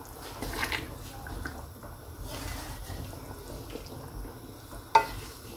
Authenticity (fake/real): real